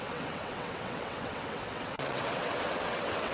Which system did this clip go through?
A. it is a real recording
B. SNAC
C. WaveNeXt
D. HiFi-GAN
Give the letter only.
C